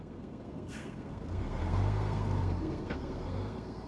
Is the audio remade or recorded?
remade